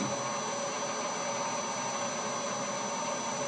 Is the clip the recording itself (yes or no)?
yes